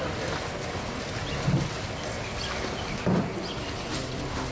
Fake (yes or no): no